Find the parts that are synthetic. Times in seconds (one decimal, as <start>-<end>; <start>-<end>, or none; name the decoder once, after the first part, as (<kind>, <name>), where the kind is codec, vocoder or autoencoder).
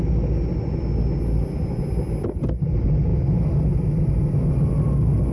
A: none